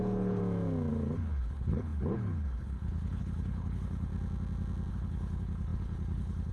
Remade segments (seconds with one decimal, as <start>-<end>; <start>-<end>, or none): 0.0-0.4; 0.9-4.1; 4.9-6.5